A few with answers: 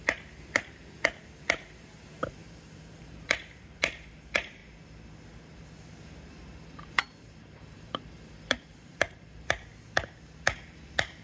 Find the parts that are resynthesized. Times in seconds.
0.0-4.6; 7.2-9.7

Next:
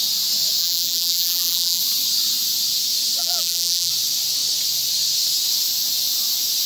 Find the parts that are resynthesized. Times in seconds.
0.6-1.8; 3.2-3.9

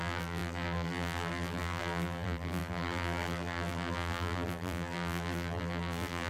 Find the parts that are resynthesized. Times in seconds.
0.0-6.3

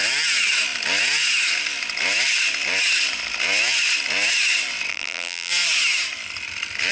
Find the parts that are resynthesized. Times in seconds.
4.9-5.5

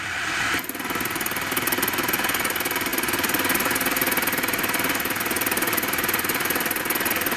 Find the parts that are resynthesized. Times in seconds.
2.9-6.8

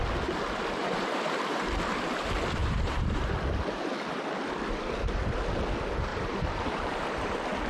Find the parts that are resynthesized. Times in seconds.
0.8-1.7; 2.6-3.2; 6.1-7.3